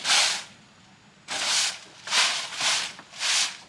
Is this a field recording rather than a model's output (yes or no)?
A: yes